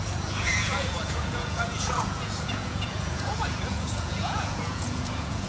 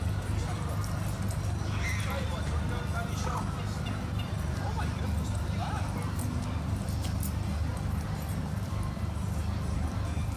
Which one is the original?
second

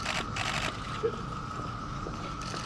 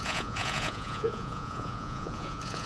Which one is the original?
first